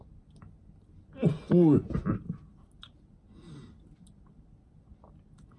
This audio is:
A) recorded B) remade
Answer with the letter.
A